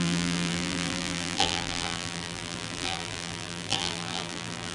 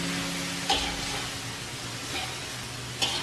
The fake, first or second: first